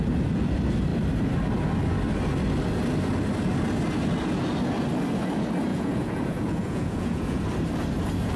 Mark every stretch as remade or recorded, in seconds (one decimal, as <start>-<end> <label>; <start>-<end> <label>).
0.0-5.7 recorded; 5.7-7.4 remade; 7.4-8.4 recorded